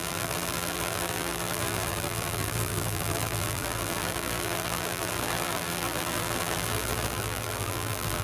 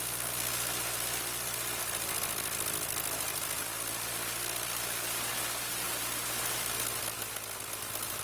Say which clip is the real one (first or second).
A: second